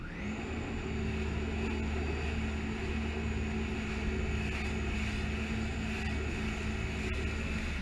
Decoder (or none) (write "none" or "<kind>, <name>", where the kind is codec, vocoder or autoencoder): none